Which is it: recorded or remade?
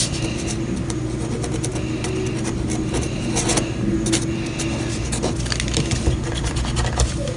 recorded